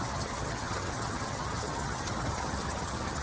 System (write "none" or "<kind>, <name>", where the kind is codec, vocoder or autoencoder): vocoder, HiFi-GAN